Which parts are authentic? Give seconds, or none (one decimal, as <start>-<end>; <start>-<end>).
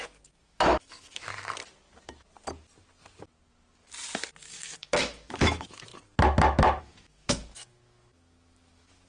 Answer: 1.3-4.4; 5.9-6.8